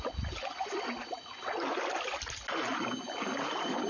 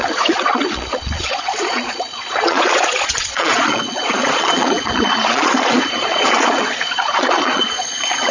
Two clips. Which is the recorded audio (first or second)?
first